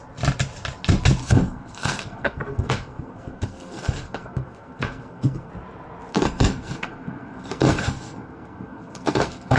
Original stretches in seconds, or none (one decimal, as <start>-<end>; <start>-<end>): 0.0-1.2; 5.5-6.1